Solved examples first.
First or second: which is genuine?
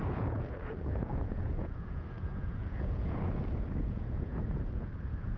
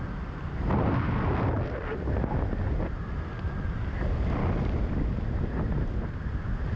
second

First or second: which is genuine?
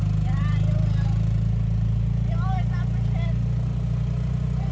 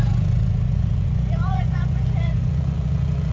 first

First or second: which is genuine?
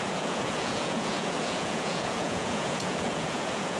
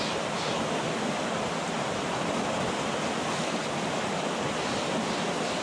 second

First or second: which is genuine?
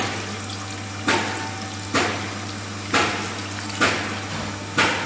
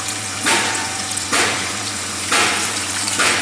first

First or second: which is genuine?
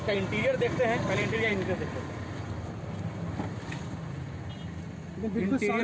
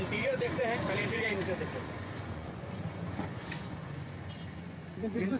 first